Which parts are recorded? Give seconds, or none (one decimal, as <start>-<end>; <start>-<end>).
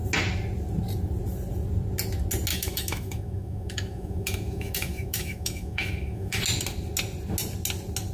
0.0-2.5; 6.4-8.1